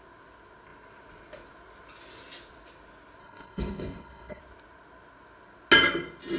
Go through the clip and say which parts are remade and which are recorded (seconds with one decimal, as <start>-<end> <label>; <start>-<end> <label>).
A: 0.0-3.2 recorded; 3.2-4.4 remade; 4.4-6.4 recorded